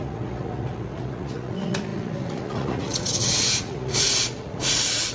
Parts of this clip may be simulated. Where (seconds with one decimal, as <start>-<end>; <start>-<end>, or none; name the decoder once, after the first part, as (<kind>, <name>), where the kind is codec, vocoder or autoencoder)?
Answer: 0.0-5.1 (vocoder, Vocos)